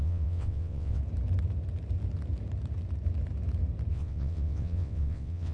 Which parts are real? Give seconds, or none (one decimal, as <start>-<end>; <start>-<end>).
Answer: 1.0-3.9